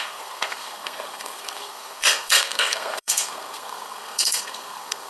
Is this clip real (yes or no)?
no